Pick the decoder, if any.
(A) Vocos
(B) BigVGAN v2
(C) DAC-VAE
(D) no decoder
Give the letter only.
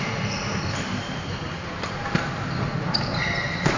B